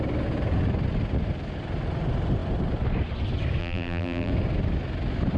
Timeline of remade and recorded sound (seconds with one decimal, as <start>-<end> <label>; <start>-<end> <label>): 0.0-3.6 recorded; 3.6-4.3 remade; 4.3-5.4 recorded